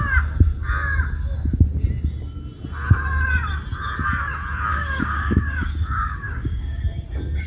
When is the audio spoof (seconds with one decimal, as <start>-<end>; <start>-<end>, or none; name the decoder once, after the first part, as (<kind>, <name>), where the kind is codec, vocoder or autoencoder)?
4.7-6.8 (codec, DAC)